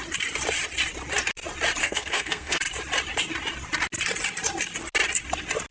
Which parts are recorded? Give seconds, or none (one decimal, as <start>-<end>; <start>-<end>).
0.0-1.8; 2.6-5.7